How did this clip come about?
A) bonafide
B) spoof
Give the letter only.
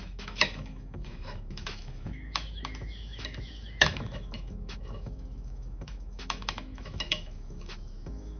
B